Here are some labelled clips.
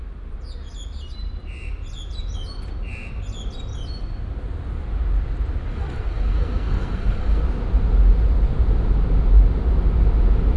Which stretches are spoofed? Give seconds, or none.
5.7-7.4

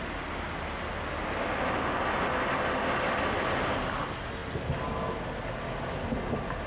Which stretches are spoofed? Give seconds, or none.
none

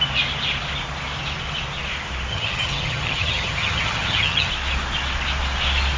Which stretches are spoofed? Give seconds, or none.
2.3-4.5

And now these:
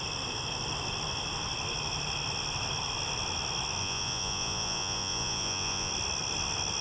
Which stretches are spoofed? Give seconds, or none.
3.8-5.9

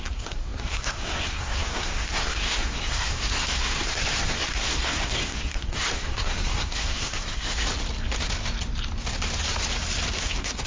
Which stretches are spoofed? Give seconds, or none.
0.0-7.7; 10.2-10.7